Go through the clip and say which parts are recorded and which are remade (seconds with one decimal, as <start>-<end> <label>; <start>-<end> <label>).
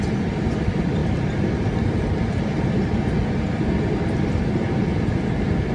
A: 0.0-5.7 recorded